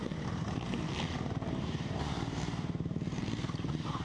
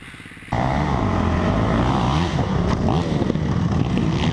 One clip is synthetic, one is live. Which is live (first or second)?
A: second